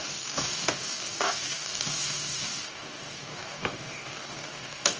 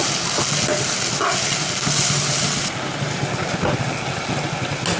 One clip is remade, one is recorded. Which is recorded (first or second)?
second